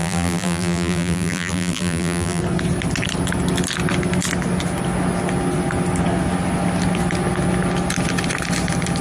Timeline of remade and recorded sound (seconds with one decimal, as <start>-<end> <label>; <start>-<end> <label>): 0.0-2.4 remade; 2.4-9.0 recorded